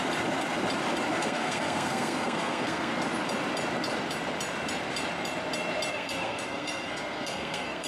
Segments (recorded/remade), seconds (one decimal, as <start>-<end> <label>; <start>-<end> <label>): 0.0-1.1 recorded; 1.1-2.9 remade; 2.9-5.9 recorded; 5.9-7.9 remade